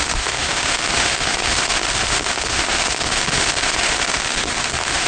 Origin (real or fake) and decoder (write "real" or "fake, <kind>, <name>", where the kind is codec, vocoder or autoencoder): fake, autoencoder, DAC-VAE